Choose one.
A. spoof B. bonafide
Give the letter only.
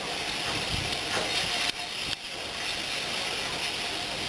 B